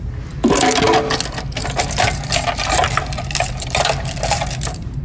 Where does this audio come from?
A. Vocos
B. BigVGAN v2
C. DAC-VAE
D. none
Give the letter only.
D